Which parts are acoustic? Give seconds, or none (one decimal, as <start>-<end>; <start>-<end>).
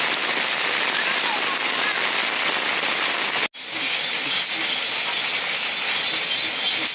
0.0-6.9